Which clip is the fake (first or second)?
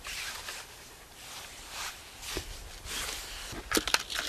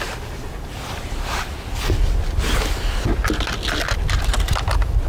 first